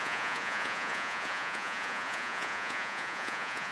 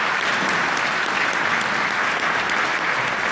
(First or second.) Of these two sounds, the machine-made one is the first